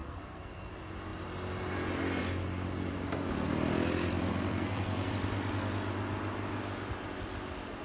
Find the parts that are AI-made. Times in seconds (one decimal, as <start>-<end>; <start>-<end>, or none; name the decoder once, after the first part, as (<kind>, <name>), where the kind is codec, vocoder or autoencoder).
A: 0.0-0.7 (codec, SNAC); 4.3-5.1